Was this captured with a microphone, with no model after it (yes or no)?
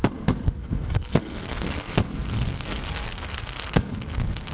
no